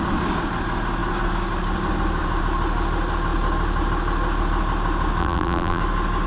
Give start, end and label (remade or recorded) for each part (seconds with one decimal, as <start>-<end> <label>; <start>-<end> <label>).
0.0-5.2 recorded; 5.2-5.8 remade; 5.8-6.3 recorded